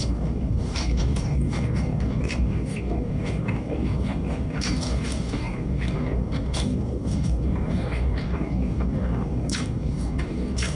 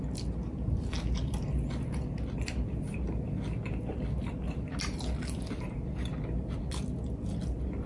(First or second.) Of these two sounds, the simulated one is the first